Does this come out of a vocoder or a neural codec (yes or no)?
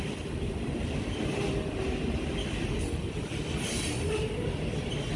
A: no